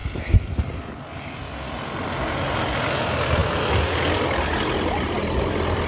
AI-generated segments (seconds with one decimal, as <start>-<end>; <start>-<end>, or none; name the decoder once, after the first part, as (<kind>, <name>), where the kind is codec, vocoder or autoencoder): none